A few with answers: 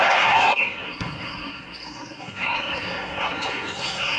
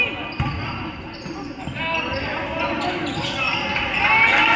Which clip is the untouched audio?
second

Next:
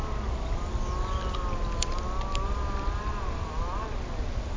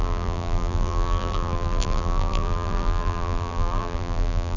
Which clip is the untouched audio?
first